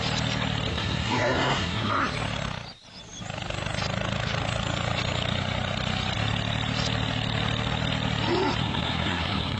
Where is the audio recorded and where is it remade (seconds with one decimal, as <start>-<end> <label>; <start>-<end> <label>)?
0.0-0.7 recorded; 0.7-2.0 remade; 2.0-8.6 recorded; 8.6-9.6 remade